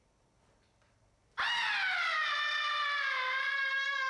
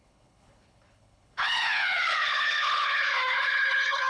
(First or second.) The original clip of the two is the first